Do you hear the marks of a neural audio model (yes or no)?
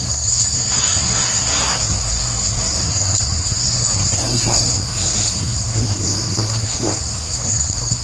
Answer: yes